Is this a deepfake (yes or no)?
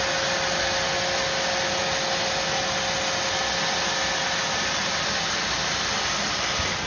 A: no